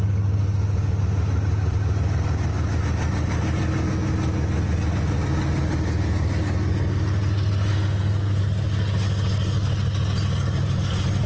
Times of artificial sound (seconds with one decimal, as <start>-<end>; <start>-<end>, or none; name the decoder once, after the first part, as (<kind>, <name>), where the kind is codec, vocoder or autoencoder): 7.7-8.4 (codec, SNAC)